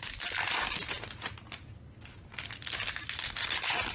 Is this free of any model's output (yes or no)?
yes